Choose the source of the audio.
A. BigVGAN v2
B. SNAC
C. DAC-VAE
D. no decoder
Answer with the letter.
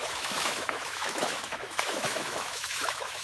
C